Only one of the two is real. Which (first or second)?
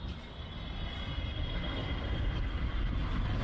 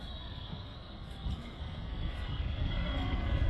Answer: first